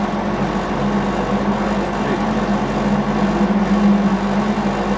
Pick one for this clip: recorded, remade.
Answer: recorded